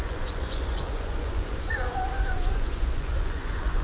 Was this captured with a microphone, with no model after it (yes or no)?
no